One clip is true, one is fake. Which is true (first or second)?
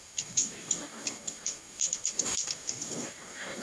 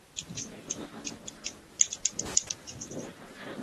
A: second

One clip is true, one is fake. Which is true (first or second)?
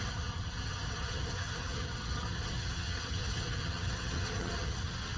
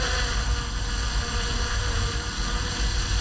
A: second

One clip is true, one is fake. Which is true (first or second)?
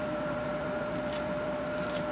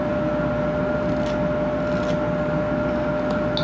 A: second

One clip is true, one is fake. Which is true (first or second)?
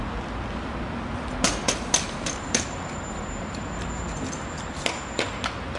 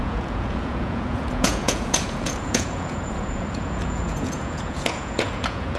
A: first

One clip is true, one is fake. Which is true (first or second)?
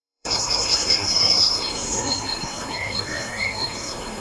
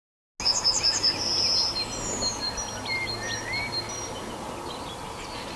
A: second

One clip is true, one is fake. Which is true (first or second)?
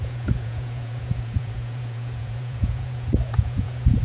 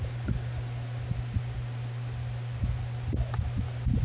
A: second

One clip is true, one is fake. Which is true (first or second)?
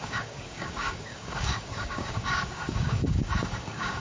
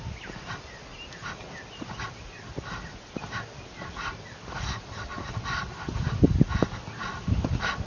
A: second